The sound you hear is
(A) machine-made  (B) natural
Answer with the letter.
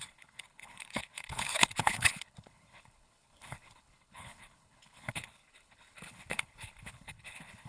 A